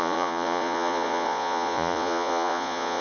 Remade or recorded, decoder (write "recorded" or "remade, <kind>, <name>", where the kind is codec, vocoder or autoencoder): remade, vocoder, Vocos